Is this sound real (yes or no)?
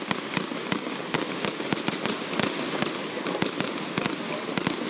yes